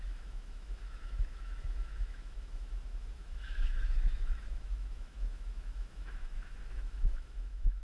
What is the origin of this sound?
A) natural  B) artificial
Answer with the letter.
B